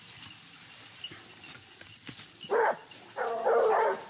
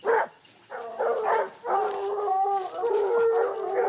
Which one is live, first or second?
second